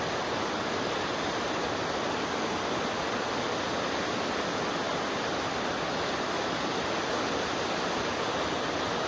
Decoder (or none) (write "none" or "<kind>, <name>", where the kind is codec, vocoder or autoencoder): none